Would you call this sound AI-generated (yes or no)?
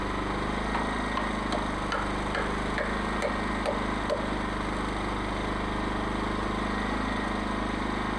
no